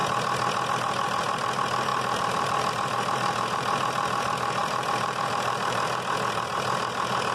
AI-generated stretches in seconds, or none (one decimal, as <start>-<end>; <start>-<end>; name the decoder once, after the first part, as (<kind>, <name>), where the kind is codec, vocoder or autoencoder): 0.7-7.3 (vocoder, BigVGAN v2)